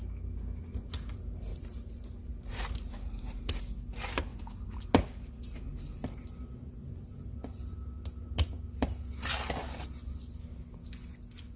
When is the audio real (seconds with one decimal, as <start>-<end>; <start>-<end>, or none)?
0.0-1.5; 3.6-11.6